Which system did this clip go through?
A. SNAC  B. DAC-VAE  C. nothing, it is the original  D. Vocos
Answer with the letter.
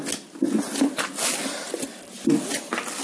C